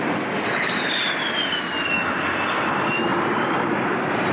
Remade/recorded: recorded